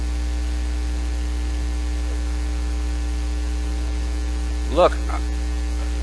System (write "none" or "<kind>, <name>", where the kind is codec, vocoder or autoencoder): none